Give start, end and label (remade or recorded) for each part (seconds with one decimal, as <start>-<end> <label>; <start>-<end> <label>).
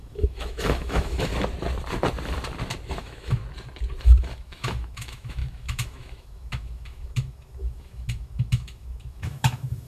0.0-1.3 remade; 1.3-3.0 recorded; 3.0-3.4 remade; 3.4-4.0 recorded; 4.0-9.9 remade